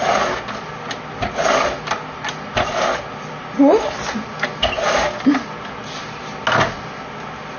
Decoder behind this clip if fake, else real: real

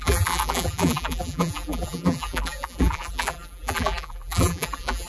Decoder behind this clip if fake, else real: fake, vocoder, BigVGAN v2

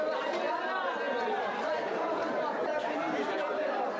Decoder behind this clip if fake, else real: real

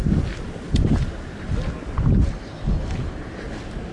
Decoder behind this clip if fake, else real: real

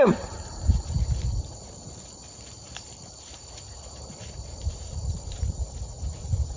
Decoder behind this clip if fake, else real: fake, vocoder, BigVGAN v2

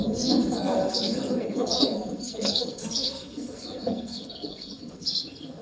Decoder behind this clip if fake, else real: fake, codec, SNAC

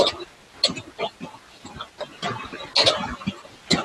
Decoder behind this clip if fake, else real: real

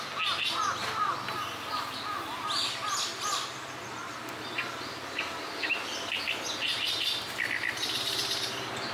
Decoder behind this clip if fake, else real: real